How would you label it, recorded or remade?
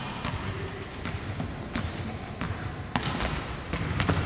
recorded